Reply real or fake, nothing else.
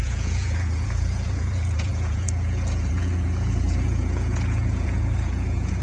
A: fake